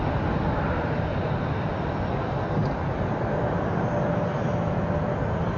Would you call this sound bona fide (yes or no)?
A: yes